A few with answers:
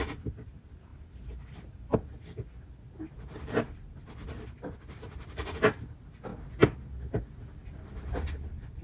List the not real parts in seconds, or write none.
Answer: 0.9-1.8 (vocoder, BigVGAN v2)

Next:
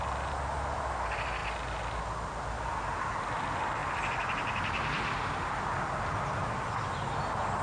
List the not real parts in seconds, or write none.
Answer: none

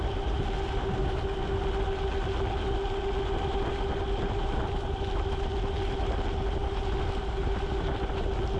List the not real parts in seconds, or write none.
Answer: 1.0-1.6 (vocoder, BigVGAN v2)